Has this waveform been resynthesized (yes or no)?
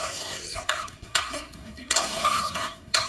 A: yes